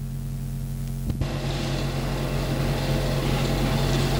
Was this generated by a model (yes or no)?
no